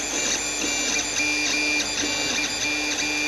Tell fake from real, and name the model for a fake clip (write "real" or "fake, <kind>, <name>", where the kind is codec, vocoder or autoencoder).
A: real